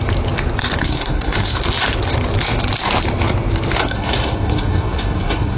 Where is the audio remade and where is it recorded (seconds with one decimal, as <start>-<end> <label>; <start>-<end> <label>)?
0.0-0.8 recorded; 0.8-1.6 remade; 1.6-3.8 recorded; 3.8-5.6 remade